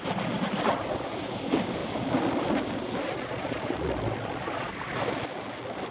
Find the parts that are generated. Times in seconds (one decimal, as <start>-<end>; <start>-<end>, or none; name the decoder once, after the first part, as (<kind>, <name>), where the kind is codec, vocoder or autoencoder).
none